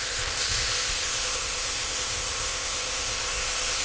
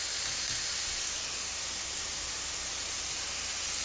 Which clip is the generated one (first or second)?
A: first